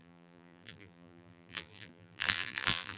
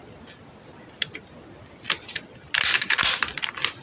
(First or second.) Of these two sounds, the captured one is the second